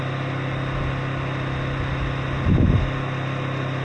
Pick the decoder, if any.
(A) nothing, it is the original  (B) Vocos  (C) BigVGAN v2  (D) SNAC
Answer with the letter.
A